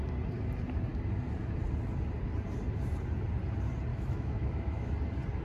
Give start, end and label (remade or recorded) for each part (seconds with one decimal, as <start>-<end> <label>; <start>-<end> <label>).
0.0-3.9 recorded; 3.9-4.9 remade; 4.9-5.4 recorded

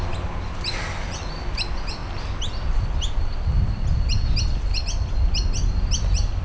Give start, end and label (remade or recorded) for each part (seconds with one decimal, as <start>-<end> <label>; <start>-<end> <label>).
0.0-6.4 recorded

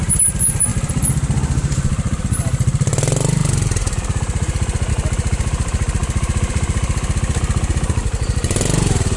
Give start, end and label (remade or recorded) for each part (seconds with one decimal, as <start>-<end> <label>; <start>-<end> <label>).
0.0-9.2 remade

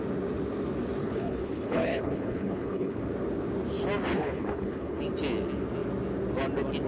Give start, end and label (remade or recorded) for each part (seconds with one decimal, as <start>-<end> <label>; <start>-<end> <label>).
0.0-1.0 recorded; 1.0-3.0 remade; 3.0-4.1 recorded; 4.1-5.0 remade; 5.0-6.9 recorded

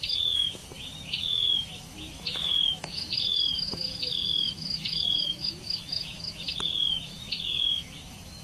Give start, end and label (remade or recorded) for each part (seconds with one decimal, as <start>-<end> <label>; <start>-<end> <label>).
0.0-8.4 remade

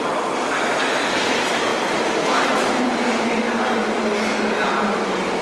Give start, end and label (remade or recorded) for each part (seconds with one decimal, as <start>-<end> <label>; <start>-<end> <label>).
0.0-5.4 recorded

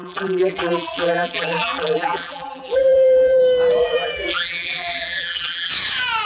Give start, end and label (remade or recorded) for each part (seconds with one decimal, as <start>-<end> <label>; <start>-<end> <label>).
0.0-3.4 remade; 3.4-3.8 recorded; 3.8-5.7 remade; 5.7-6.3 recorded

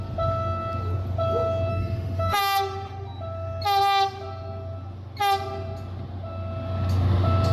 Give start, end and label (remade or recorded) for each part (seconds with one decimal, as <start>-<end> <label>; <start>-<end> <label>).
0.0-1.7 recorded; 1.7-2.4 remade; 2.4-7.5 recorded